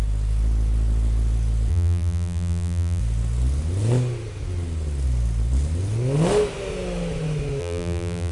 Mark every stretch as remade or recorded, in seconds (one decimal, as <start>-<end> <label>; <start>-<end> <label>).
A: 0.0-1.7 recorded; 1.7-3.0 remade; 3.0-7.6 recorded; 7.6-8.3 remade